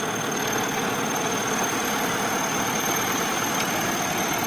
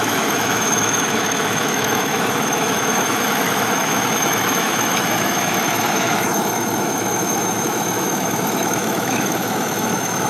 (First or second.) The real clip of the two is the first